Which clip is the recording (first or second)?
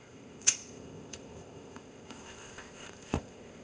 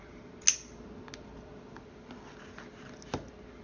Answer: second